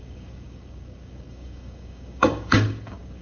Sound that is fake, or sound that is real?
fake